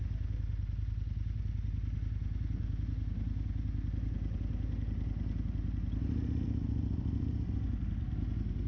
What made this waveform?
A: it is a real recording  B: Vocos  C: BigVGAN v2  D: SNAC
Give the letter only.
C